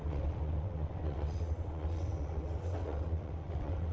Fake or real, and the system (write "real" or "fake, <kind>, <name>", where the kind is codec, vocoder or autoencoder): fake, vocoder, WaveNeXt